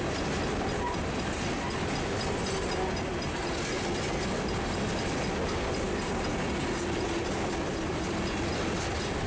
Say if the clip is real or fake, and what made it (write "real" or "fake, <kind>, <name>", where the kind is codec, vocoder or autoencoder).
real